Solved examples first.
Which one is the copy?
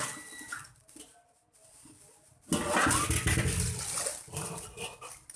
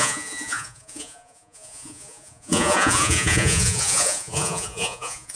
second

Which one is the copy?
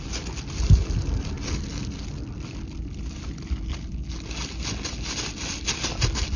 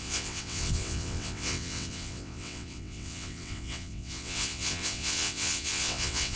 second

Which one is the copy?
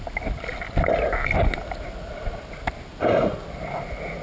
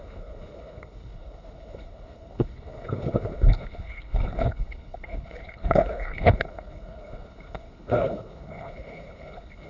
second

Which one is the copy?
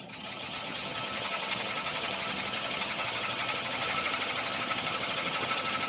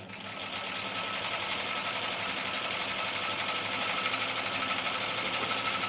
first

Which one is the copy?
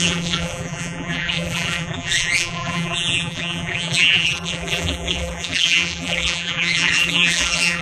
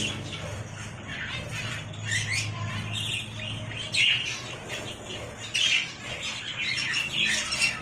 first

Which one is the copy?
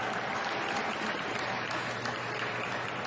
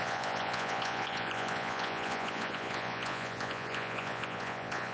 second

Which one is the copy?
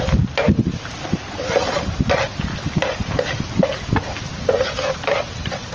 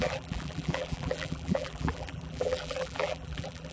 second